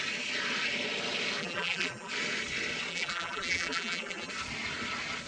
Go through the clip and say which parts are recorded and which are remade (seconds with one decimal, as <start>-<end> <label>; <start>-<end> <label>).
0.0-1.4 recorded; 1.4-2.1 remade; 2.1-2.9 recorded; 2.9-4.3 remade; 4.3-5.3 recorded